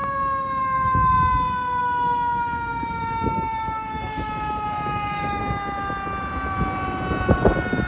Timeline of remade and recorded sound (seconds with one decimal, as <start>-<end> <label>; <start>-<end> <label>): 0.0-1.8 recorded; 1.8-5.4 remade; 5.4-7.9 recorded